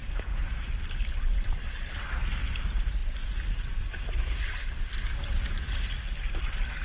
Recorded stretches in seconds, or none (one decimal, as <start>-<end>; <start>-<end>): 0.5-6.8